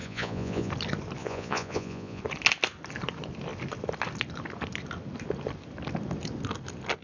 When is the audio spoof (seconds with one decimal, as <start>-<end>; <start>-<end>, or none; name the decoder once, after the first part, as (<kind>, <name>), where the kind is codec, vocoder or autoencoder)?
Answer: 0.0-0.7 (vocoder, Vocos); 1.2-2.2